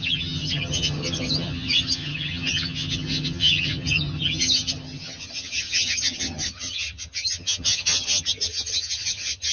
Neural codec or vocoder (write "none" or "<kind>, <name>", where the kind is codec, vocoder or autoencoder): vocoder, HiFi-GAN